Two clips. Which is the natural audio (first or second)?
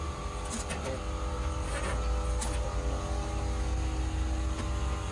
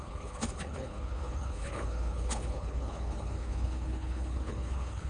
first